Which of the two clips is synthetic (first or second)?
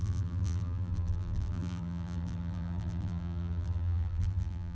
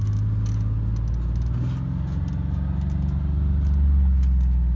first